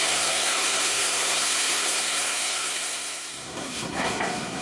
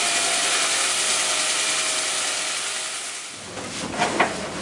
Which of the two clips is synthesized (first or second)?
first